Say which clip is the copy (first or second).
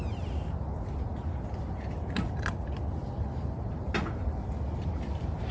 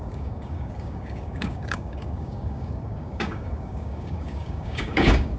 second